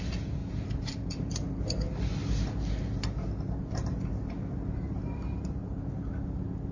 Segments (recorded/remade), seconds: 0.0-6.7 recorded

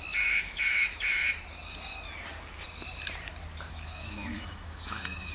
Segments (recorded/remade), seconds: 0.0-1.2 remade; 1.2-3.7 recorded; 3.7-5.3 remade

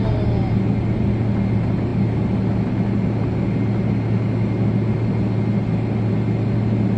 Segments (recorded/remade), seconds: 0.0-7.0 recorded

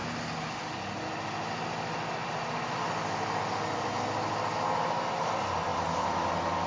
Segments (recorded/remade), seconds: 0.0-6.7 recorded

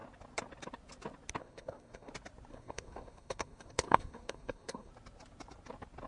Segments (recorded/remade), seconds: 0.0-1.4 recorded; 1.4-2.1 remade; 2.1-2.5 recorded; 2.5-4.9 remade; 4.9-6.1 recorded

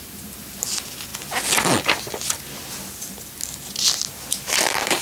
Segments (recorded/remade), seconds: 0.0-1.1 remade; 1.1-4.1 recorded; 4.1-5.0 remade